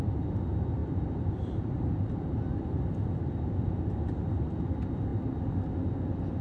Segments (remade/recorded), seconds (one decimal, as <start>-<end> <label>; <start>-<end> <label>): 0.0-6.4 recorded